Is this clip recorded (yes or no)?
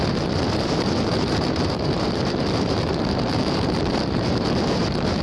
no